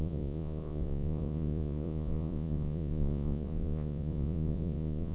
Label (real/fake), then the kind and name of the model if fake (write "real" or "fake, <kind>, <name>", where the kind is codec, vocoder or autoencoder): fake, vocoder, Vocos